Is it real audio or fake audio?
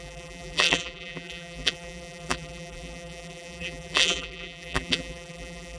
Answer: fake